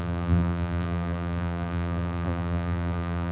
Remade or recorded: remade